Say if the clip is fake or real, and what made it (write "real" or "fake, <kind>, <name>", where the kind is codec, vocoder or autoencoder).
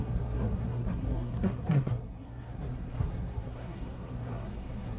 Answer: fake, codec, SNAC